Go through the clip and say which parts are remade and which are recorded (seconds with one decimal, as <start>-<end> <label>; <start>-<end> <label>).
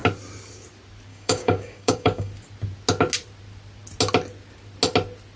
0.0-1.1 recorded; 1.1-2.3 remade; 2.3-5.4 recorded